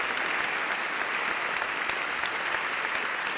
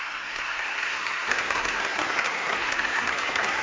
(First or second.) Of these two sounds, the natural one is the first